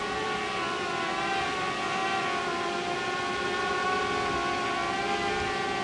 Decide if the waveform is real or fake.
real